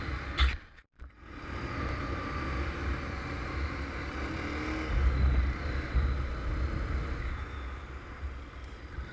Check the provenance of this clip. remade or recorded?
recorded